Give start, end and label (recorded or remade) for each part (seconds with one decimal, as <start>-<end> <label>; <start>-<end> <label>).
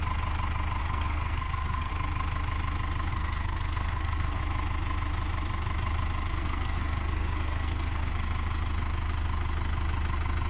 0.0-0.8 recorded; 0.8-1.9 remade; 1.9-3.1 recorded; 3.1-4.4 remade; 4.4-6.3 recorded; 6.3-8.1 remade; 8.1-10.5 recorded